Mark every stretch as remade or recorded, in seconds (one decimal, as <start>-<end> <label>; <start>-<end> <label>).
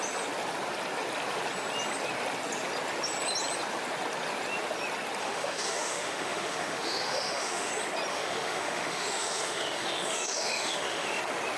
0.0-5.2 recorded; 5.2-7.7 remade; 7.7-8.1 recorded; 8.1-11.2 remade; 11.2-11.6 recorded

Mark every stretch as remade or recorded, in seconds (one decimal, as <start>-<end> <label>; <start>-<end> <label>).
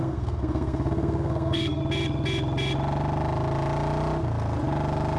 0.0-1.8 remade; 1.8-5.2 recorded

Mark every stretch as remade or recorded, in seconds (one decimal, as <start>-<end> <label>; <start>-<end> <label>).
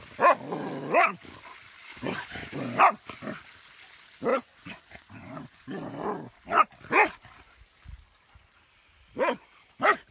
0.0-1.9 recorded; 1.9-2.8 remade; 2.8-4.3 recorded; 4.3-6.3 remade; 6.3-10.1 recorded